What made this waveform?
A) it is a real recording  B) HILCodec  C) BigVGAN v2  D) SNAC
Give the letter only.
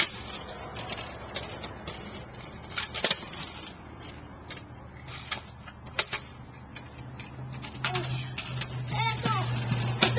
A